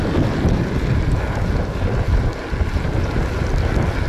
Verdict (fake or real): real